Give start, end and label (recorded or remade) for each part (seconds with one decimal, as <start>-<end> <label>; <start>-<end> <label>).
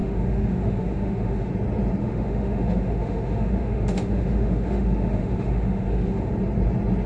0.0-1.5 remade; 1.5-2.0 recorded; 2.0-6.3 remade; 6.3-7.1 recorded